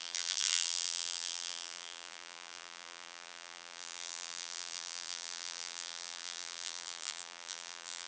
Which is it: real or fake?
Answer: fake